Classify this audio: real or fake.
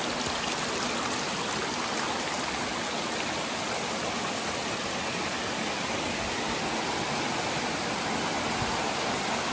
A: real